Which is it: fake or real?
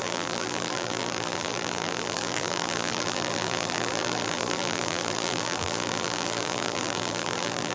fake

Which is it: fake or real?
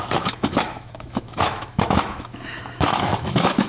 fake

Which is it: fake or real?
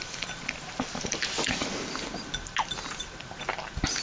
real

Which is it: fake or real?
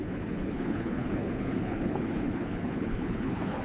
fake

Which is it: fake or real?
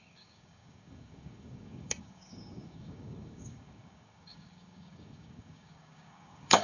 fake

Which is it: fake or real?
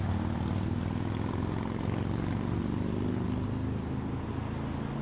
real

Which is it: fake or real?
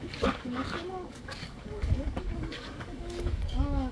fake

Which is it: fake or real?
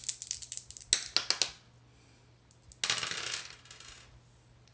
real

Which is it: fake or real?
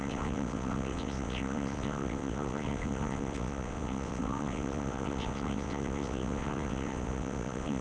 fake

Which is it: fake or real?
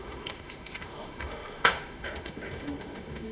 fake